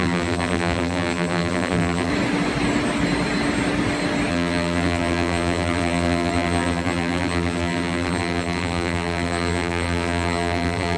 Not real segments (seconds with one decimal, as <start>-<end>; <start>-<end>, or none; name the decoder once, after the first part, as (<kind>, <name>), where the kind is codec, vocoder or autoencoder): 0.0-2.1 (vocoder, BigVGAN v2); 4.3-11.0